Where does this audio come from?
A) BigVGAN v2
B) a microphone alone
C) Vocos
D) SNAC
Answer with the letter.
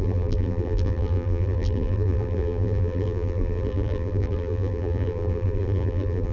A